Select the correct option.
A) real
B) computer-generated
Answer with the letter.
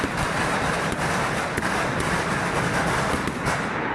A